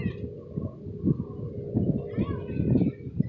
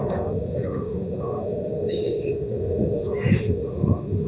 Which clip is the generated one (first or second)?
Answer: second